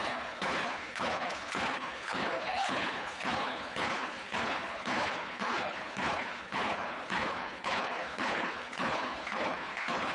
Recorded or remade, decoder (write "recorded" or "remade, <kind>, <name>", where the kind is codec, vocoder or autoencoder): remade, codec, HILCodec